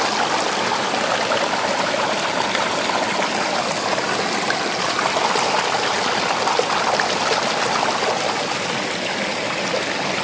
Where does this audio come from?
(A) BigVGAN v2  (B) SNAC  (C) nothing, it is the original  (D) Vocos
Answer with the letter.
C